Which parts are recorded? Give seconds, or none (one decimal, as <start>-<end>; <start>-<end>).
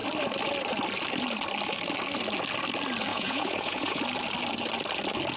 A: 0.0-3.1; 4.0-5.4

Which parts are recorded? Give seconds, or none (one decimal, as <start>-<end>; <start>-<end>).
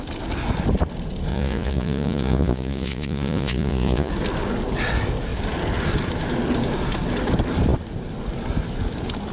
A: 0.0-1.3; 4.1-9.3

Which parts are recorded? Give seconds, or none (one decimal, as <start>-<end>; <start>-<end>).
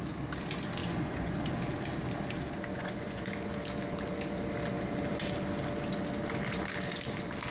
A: 0.0-0.8; 1.4-2.7; 3.2-7.5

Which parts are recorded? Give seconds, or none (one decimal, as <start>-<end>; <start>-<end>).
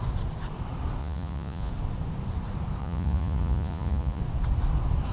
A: 0.0-1.0; 1.7-2.8; 4.2-5.1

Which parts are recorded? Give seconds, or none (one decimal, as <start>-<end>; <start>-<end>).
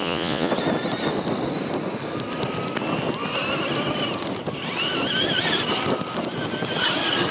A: 0.5-7.3